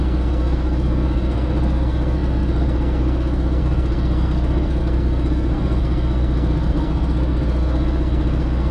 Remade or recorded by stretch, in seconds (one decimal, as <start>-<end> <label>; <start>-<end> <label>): 0.0-8.7 remade